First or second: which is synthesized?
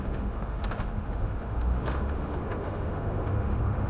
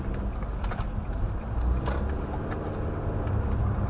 first